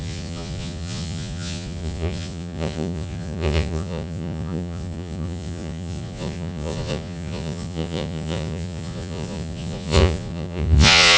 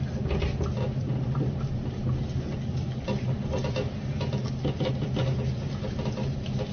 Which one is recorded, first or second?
second